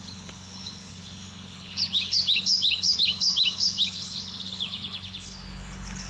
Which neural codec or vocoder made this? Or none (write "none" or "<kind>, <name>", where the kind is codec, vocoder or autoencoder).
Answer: codec, HILCodec